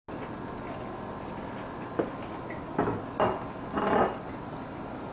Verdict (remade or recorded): recorded